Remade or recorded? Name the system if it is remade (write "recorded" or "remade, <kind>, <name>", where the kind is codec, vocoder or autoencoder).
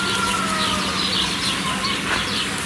recorded